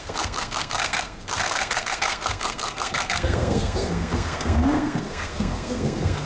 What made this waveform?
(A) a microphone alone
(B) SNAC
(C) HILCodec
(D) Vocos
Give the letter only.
B